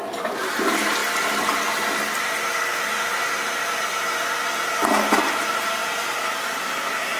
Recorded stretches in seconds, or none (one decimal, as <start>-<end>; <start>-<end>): 0.0-7.2